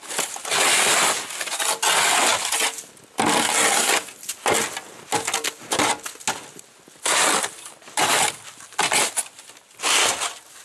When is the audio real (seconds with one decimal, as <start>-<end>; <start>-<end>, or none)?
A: 0.0-10.6